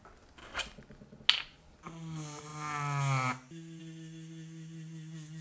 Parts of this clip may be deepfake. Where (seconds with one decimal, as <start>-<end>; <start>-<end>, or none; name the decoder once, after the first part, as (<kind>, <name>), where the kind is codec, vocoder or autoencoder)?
0.4-1.2 (vocoder, BigVGAN v2)